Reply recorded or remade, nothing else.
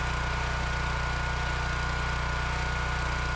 recorded